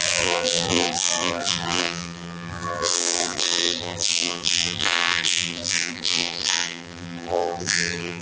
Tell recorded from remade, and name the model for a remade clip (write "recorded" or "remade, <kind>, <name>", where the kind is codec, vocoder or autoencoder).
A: remade, vocoder, BigVGAN v2